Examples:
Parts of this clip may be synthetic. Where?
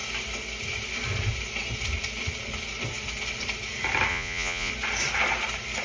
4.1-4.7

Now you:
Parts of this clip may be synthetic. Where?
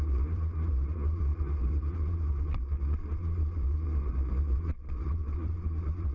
0.0-6.1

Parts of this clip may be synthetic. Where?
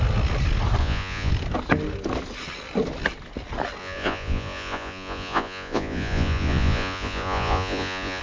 0.8-1.3; 3.8-8.2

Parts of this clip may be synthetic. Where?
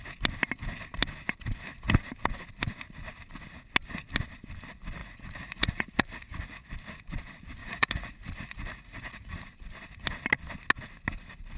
5.0-6.7; 7.6-9.5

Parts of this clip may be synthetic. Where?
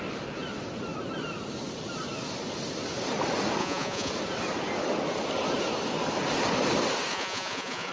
3.6-4.1; 7.1-7.9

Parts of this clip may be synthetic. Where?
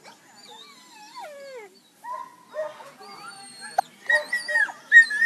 none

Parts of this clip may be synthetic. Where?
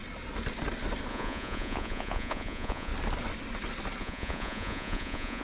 1.1-2.9; 4.0-5.4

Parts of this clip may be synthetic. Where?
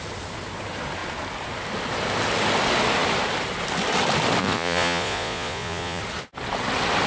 4.4-6.0